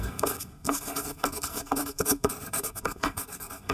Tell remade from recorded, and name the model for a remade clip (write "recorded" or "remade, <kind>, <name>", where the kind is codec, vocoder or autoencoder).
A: remade, codec, SNAC